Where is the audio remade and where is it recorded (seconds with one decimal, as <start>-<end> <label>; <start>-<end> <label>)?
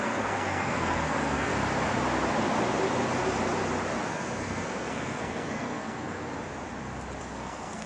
0.0-1.5 remade; 1.5-4.1 recorded; 4.1-6.3 remade; 6.3-7.2 recorded; 7.2-7.9 remade